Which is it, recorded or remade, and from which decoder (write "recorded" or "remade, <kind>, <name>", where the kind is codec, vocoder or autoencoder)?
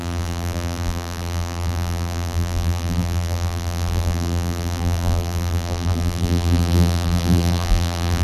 remade, vocoder, BigVGAN v2